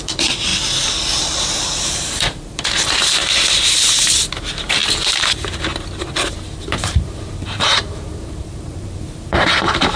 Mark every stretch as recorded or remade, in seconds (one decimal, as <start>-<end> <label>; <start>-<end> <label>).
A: 0.0-0.5 remade; 0.5-1.4 recorded; 1.4-3.2 remade; 3.2-3.7 recorded; 3.7-4.8 remade; 4.8-6.3 recorded; 6.3-10.0 remade